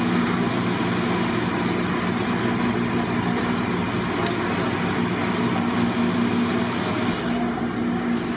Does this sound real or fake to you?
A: real